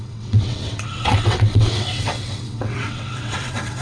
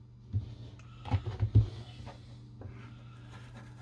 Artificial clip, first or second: first